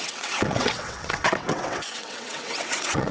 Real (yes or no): no